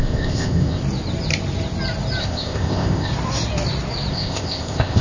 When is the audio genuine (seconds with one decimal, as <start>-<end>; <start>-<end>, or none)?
0.8-2.2; 3.1-4.1